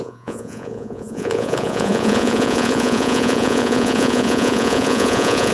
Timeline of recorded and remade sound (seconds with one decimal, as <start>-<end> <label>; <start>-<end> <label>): 0.0-5.5 remade